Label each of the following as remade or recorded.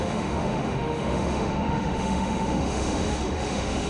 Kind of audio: remade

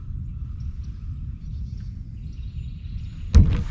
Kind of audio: recorded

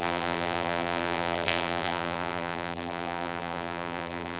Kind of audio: remade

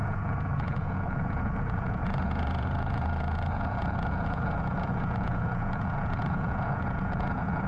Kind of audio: remade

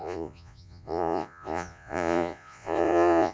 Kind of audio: remade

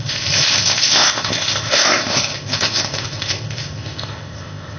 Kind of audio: remade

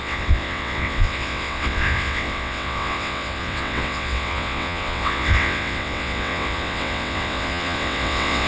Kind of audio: remade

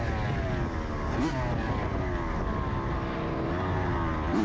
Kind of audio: recorded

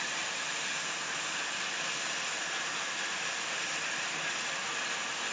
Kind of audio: recorded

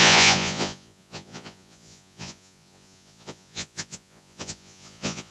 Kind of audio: remade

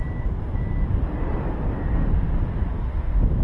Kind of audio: recorded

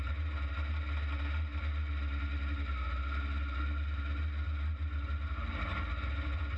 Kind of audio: recorded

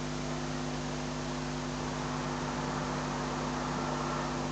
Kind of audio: recorded